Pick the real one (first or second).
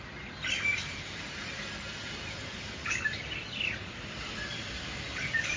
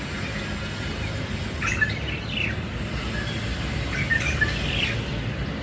second